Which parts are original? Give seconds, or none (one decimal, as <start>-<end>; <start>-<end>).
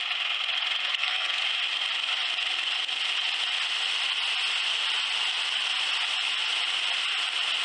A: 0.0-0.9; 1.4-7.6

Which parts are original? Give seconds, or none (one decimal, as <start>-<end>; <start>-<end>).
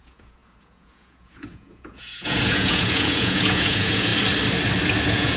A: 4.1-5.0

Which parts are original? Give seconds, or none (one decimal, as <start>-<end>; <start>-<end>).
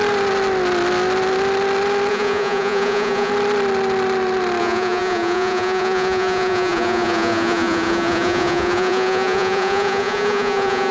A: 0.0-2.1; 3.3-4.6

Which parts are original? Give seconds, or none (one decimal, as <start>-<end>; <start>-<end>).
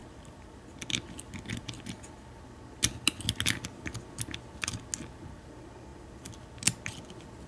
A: 0.0-7.5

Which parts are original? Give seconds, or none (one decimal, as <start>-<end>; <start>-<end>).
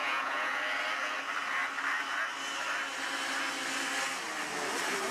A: 0.6-5.1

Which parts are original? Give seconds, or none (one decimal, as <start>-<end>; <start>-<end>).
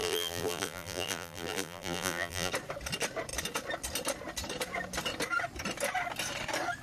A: 2.5-6.8